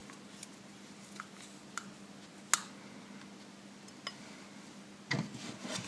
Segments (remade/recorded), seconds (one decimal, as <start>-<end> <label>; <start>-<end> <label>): 0.0-5.9 recorded